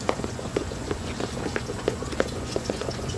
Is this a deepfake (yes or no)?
yes